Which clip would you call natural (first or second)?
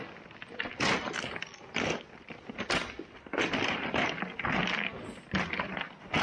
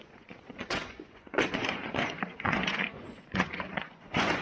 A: first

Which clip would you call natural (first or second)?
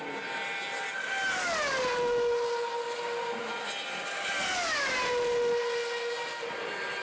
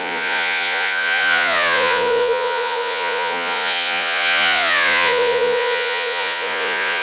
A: first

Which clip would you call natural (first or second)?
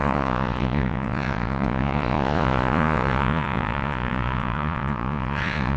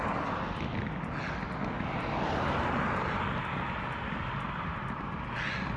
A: second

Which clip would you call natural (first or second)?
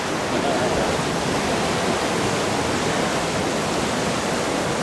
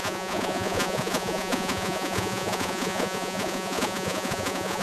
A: first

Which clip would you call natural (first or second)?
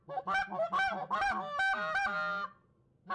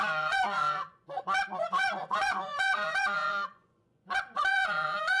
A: first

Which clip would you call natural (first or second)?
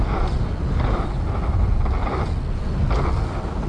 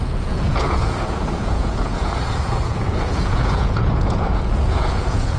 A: first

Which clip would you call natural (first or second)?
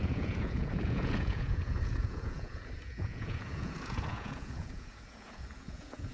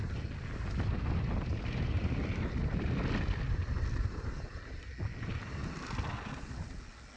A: second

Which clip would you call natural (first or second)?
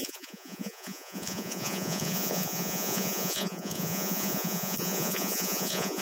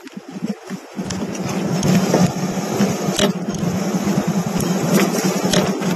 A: second